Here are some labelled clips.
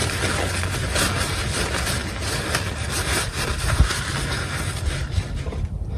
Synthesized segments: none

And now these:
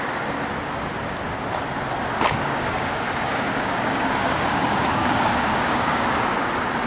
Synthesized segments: 2.1-6.2 (codec, DAC)

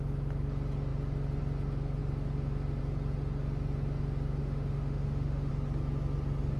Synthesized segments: 4.4-5.5 (autoencoder, DAC-VAE)

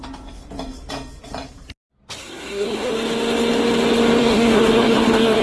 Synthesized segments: 2.2-2.9 (codec, SNAC); 4.2-5.4

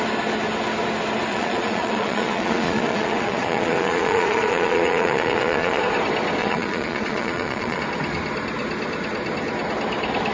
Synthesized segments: 1.3-5.8 (vocoder, Vocos); 6.4-7.8

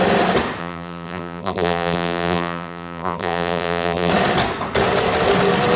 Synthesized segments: 0.6-4.1 (vocoder, BigVGAN v2)

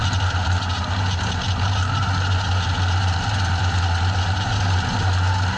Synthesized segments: none

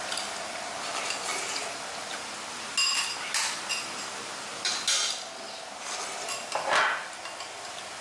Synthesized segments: none